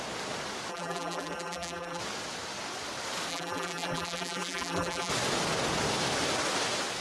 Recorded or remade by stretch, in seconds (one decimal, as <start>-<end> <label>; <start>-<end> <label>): 0.0-0.7 recorded; 0.7-2.0 remade; 2.0-3.3 recorded; 3.3-5.1 remade; 5.1-7.0 recorded